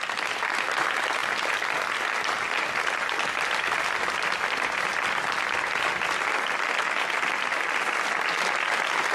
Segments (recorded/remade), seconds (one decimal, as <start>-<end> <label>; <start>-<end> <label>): 0.0-9.1 recorded